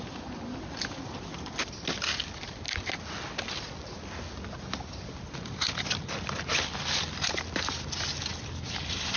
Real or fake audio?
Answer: real